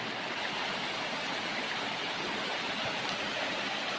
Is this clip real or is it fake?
real